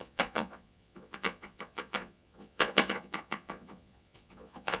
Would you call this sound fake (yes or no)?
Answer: yes